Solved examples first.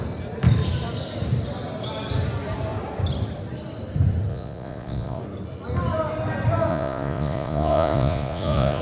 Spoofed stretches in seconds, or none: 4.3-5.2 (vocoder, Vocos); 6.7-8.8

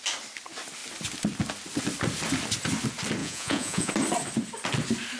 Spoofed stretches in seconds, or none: 3.2-3.9 (vocoder, Vocos)

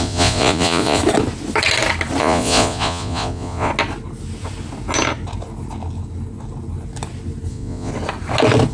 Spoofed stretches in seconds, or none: 0.0-1.0 (vocoder, Vocos); 2.2-3.7; 7.5-7.9

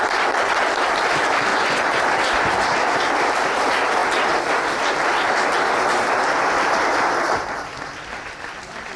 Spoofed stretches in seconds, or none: 1.5-2.0 (vocoder, Vocos)